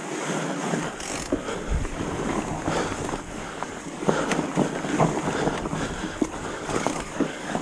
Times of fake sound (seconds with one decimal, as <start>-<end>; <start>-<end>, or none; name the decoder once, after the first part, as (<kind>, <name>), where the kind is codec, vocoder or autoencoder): 3.2-4.3 (codec, DAC); 6.4-7.6